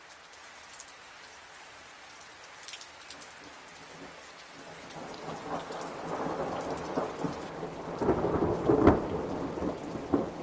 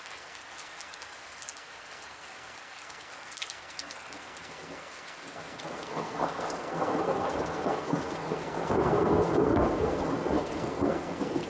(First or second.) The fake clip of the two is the second